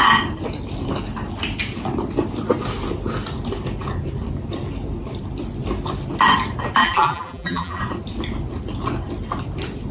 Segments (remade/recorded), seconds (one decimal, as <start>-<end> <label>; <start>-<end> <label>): 0.0-6.8 recorded; 6.8-7.8 remade; 7.8-9.9 recorded